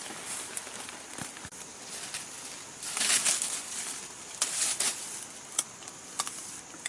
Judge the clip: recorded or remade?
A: recorded